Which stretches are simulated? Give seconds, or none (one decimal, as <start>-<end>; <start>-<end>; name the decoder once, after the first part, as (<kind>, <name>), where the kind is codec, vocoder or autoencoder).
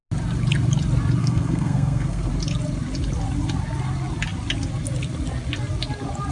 1.2-2.3 (codec, SNAC)